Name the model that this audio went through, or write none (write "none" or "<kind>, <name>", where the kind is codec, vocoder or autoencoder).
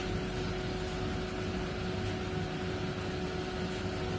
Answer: none